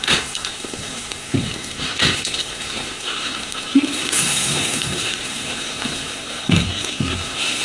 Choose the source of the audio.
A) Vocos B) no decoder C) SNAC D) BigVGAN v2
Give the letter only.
C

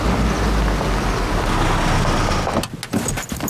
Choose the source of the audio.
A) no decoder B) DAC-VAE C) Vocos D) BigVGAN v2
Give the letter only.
A